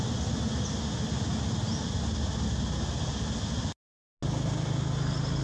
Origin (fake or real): real